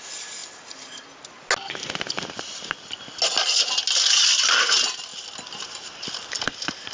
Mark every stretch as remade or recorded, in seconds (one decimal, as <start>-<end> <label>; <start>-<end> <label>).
0.0-6.9 recorded